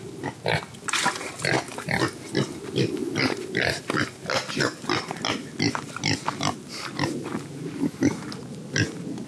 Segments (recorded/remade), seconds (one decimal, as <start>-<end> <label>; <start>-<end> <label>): 0.0-9.3 recorded